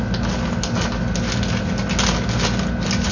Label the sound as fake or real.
real